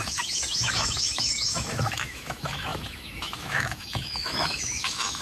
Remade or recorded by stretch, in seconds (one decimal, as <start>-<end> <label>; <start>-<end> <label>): 0.0-5.2 remade